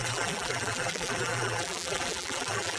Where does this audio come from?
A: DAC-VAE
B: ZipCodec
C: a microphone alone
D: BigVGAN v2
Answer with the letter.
D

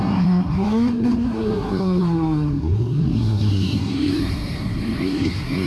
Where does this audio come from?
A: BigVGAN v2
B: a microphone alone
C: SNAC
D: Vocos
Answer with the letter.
C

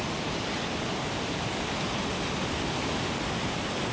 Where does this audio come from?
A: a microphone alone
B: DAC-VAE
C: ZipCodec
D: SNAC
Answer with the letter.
A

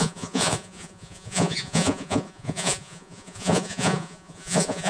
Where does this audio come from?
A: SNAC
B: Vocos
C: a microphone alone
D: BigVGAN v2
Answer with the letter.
B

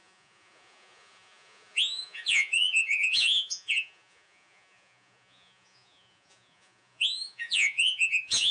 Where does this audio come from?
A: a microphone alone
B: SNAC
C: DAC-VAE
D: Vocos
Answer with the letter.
D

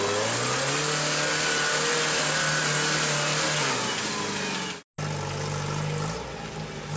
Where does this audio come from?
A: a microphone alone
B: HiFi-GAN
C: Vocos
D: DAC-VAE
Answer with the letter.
A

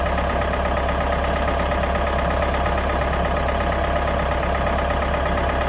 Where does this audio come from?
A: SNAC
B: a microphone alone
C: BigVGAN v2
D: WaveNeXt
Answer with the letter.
B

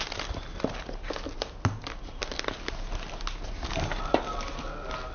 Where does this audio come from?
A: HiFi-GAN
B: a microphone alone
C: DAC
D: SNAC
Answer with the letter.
B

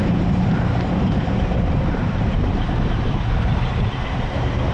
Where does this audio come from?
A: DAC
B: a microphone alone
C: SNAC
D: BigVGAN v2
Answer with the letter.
D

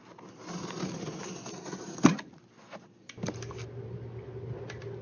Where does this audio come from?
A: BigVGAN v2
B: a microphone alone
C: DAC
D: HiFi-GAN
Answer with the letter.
B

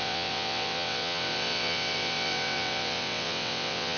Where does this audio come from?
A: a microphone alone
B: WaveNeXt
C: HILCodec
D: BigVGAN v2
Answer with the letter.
B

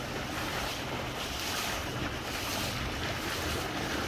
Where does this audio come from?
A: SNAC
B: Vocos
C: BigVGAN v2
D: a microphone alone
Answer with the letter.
C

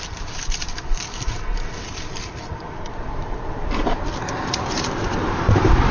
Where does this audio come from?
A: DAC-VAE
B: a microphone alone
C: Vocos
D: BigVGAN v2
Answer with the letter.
D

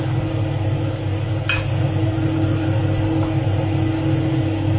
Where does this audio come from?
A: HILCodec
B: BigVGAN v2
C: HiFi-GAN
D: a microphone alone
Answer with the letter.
D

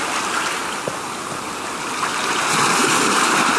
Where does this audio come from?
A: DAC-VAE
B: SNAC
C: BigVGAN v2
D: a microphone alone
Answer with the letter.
D